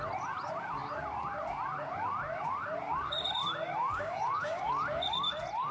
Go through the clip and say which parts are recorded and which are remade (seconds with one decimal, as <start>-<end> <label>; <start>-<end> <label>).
0.0-3.8 recorded; 3.8-4.7 remade; 4.7-5.7 recorded